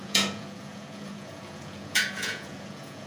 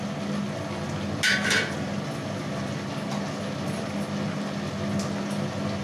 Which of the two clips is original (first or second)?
second